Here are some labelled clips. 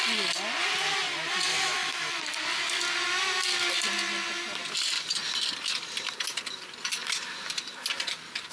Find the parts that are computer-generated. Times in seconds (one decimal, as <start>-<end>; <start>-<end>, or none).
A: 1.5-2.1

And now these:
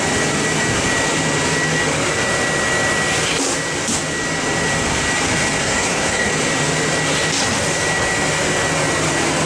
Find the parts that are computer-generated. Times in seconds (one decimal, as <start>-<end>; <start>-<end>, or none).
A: 5.6-6.3

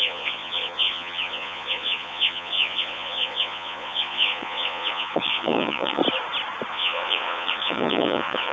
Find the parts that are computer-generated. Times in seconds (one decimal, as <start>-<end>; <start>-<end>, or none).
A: 0.0-6.0; 6.7-8.5

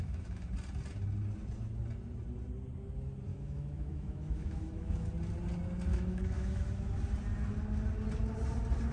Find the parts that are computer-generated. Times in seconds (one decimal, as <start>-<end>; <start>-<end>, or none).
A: 0.0-0.5; 3.3-5.1; 5.9-6.9

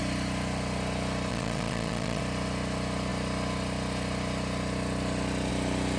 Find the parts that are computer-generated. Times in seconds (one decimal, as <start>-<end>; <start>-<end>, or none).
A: 1.3-2.2

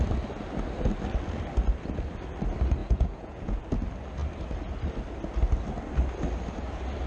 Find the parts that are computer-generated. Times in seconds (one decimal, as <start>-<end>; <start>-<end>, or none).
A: 2.8-3.6

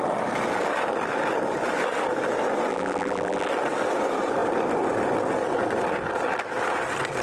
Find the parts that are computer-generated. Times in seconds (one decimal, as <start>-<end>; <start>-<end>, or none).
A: 2.7-3.5

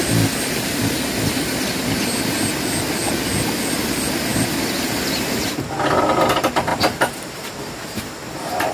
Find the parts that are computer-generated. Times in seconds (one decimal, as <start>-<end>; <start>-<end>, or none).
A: 4.3-5.5; 6.7-8.0